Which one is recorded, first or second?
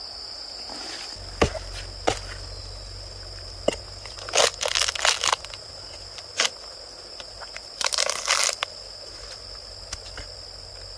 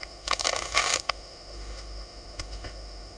first